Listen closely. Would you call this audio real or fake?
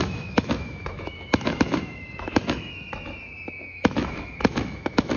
fake